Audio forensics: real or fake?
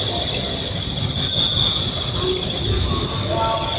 real